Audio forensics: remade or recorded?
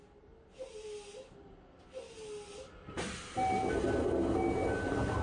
recorded